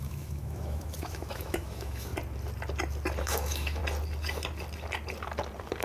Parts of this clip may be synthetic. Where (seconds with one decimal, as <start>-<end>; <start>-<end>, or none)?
0.0-2.1; 3.2-3.8